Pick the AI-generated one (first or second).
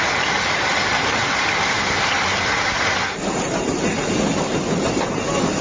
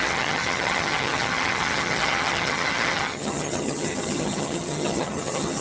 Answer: second